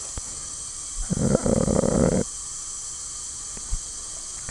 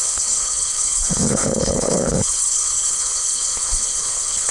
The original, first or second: first